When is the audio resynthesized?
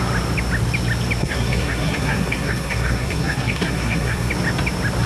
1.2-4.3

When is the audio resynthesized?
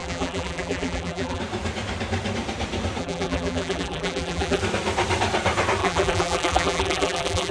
0.0-1.4; 3.0-4.6; 5.8-7.5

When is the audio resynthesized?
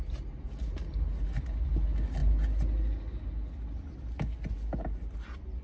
none